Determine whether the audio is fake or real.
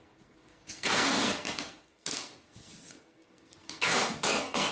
fake